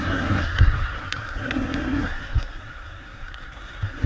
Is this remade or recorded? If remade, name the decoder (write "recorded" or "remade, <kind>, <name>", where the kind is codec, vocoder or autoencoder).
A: remade, codec, SNAC